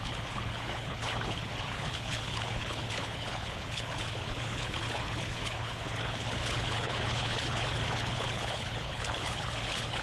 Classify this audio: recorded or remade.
remade